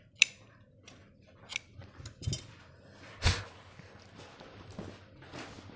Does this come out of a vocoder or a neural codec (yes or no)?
no